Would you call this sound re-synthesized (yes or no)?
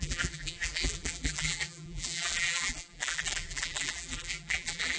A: yes